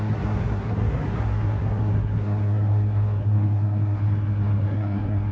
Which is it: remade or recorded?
remade